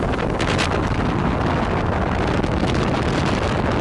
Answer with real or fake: real